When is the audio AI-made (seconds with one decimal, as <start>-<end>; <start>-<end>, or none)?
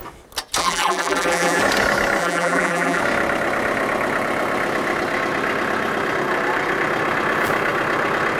0.6-1.6; 2.2-3.0